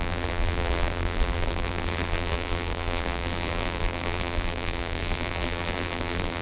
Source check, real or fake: fake